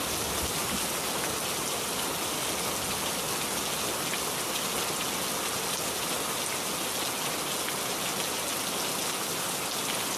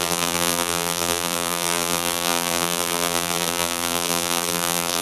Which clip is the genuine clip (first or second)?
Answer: first